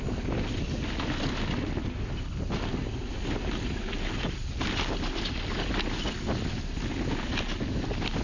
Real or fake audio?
real